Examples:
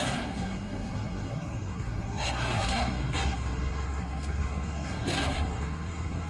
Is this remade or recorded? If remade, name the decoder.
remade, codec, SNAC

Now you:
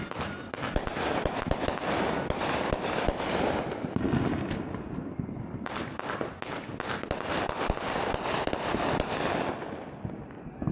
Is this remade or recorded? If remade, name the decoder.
recorded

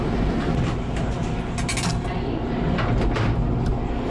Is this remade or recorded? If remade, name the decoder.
recorded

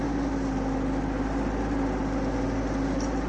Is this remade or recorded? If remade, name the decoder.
recorded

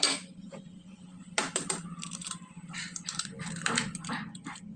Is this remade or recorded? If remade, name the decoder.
remade, vocoder, BigVGAN v2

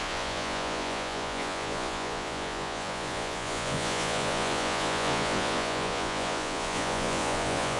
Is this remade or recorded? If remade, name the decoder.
remade, vocoder, Vocos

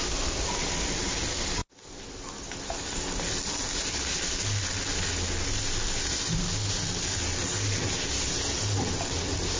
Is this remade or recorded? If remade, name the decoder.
recorded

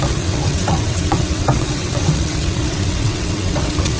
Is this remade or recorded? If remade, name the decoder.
remade, vocoder, WaveNeXt